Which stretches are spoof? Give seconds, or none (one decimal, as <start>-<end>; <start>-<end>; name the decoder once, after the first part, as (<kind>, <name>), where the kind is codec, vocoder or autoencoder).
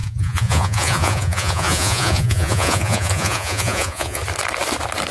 0.0-4.2 (vocoder, Vocos)